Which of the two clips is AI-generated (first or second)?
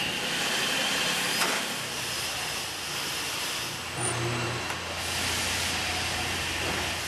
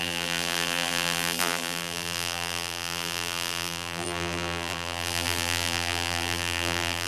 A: second